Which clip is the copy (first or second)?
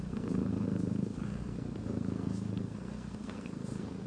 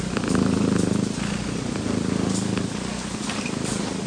first